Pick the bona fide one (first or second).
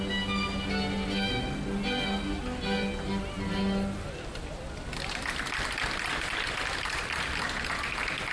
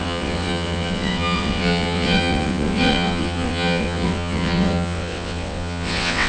first